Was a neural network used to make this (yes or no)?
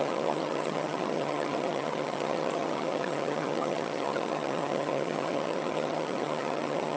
yes